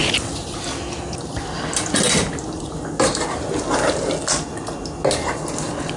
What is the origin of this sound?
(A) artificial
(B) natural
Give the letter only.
B